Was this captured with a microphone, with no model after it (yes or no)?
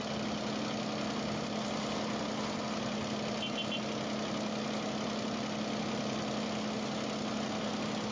yes